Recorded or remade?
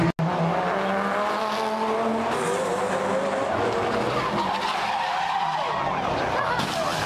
recorded